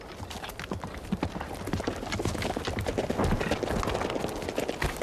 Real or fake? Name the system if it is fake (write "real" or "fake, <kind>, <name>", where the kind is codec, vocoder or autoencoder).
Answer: real